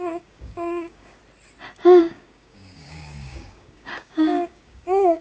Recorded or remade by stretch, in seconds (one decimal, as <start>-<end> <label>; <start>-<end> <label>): 0.0-1.2 remade; 1.2-2.0 recorded; 2.0-5.2 remade